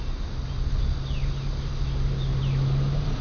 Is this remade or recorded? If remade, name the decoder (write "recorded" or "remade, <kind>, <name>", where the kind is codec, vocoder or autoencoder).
recorded